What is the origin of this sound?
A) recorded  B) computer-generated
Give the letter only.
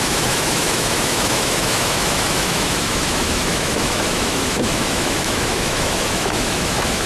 B